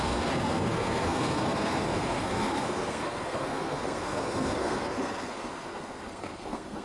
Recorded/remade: remade